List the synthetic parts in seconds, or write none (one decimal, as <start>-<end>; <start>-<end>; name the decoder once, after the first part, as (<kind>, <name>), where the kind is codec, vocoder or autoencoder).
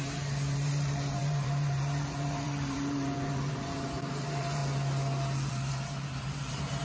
0.0-4.6 (vocoder, BigVGAN v2); 5.5-6.8